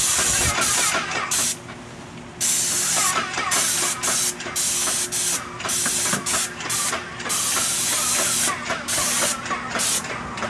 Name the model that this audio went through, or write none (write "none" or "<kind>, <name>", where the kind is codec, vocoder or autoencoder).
none